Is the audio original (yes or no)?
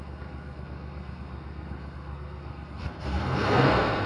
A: no